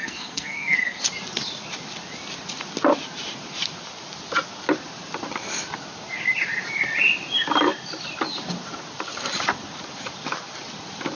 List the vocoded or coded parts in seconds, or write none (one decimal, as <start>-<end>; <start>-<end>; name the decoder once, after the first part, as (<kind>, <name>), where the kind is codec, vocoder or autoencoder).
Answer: 0.0-1.0 (codec, SNAC)

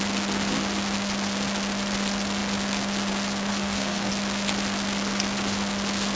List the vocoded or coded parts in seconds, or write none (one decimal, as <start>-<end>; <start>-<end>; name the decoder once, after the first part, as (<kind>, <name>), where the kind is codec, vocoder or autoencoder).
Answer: 3.5-4.1 (codec, SNAC)

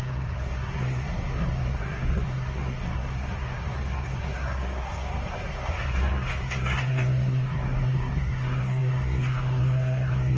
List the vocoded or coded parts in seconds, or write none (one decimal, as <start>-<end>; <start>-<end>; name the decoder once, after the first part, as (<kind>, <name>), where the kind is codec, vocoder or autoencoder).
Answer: 0.0-10.4 (codec, SNAC)

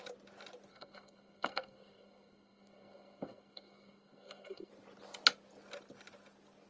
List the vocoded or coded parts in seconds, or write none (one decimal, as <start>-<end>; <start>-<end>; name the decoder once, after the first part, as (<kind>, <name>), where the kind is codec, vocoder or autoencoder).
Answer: 0.7-4.7 (codec, SNAC)